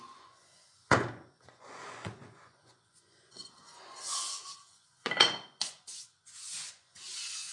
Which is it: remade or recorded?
remade